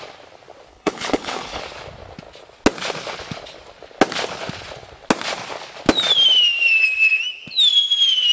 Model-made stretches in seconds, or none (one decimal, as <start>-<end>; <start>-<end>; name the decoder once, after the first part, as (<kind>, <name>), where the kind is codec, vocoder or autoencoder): 0.7-1.6 (codec, HILCodec)